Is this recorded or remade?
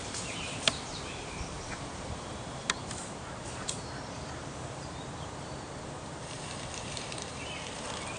remade